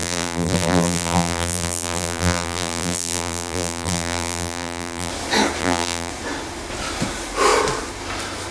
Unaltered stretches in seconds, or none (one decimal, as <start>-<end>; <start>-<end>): 5.1-5.6; 6.1-8.5